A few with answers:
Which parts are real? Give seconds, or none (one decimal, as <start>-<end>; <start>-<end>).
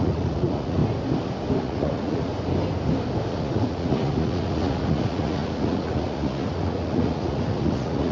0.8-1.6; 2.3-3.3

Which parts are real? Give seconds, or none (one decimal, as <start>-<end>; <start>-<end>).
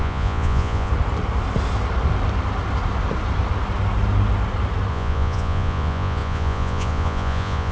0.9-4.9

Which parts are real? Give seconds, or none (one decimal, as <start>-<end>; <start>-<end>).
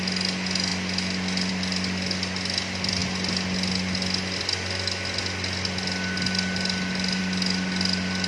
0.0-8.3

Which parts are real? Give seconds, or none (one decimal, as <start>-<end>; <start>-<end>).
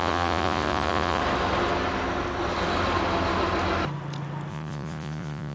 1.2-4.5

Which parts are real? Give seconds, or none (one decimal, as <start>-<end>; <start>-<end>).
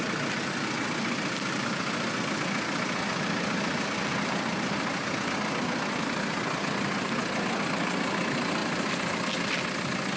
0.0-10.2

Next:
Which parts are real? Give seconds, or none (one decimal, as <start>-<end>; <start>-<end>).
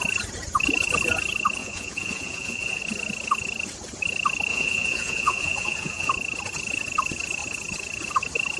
0.0-1.6; 2.8-4.5; 6.1-8.6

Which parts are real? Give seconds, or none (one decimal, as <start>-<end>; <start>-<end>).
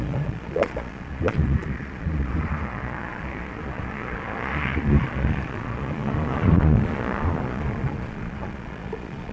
none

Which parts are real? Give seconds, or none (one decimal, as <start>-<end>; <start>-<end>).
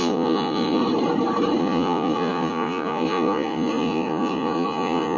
0.8-1.6